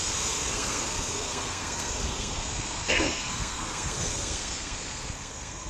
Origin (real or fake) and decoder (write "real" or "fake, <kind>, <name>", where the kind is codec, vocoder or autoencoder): fake, codec, SNAC